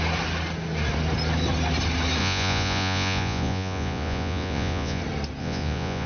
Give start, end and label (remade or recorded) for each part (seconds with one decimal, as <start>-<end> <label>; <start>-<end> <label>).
0.0-2.2 recorded; 2.2-5.0 remade; 5.0-5.4 recorded; 5.4-6.1 remade